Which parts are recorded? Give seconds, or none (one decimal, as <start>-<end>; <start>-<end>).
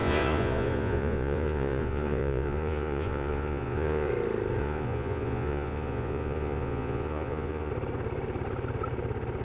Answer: 4.1-4.6; 7.7-9.4